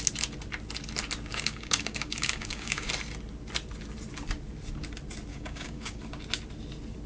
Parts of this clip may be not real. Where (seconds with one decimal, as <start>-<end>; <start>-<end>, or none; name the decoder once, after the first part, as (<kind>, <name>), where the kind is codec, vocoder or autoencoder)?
1.3-2.9 (codec, DAC); 5.3-6.0